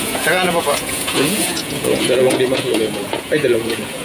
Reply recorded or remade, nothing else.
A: remade